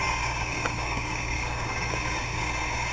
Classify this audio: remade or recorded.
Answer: remade